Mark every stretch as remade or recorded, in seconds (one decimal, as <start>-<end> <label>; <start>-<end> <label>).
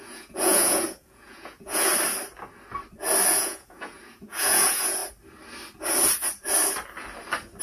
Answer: 0.0-1.9 remade; 1.9-3.3 recorded; 3.3-5.0 remade; 5.0-7.6 recorded